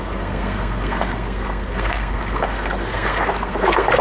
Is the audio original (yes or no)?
no